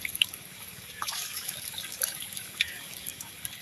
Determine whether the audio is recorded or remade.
remade